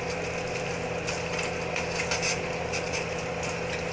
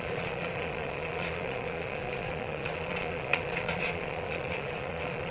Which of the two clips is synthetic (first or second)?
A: second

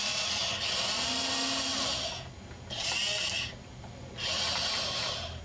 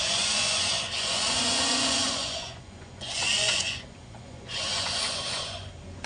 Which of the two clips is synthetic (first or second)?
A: second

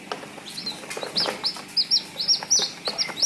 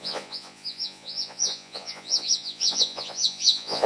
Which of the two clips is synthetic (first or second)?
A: second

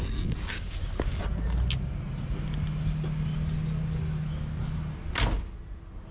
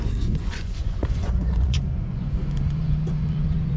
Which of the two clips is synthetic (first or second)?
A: second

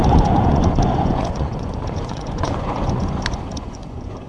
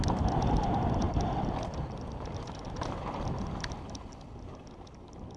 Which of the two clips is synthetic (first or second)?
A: first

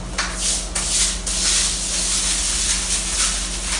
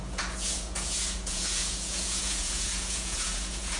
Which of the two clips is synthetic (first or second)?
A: second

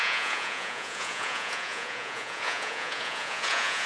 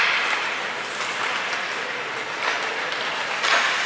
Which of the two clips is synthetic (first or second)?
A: first